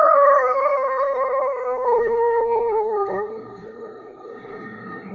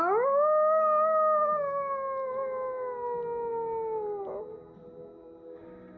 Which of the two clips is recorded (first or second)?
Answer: second